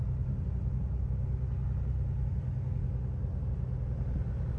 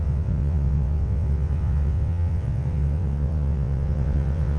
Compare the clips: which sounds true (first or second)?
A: first